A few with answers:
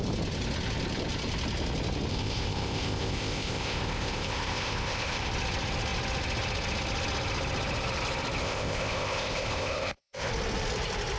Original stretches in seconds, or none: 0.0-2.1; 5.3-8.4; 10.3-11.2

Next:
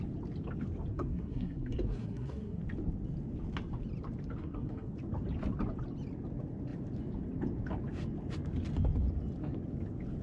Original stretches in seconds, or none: 0.0-0.9; 2.6-4.4; 4.9-10.2

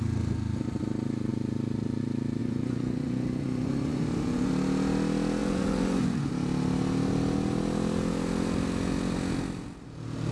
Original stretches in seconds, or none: 0.0-2.4; 4.5-5.4; 6.3-10.3

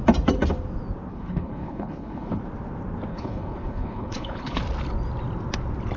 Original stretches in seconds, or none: 0.0-1.1; 2.4-3.1; 4.6-6.0

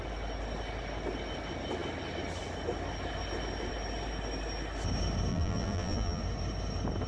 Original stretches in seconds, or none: 0.0-5.3; 6.2-7.1